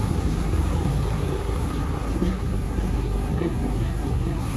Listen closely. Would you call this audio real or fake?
fake